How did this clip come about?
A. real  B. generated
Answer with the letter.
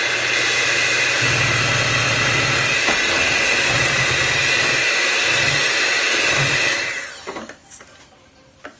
A